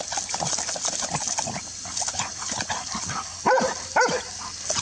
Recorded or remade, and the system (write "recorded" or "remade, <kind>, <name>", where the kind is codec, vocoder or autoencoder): recorded